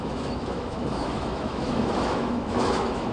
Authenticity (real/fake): fake